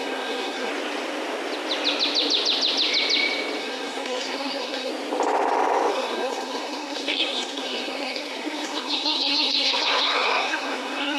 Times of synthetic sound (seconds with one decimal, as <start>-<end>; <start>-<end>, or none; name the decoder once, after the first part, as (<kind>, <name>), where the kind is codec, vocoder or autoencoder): 0.0-0.7 (codec, SNAC); 3.6-4.9; 5.9-11.2